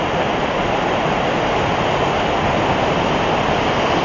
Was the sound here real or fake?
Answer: real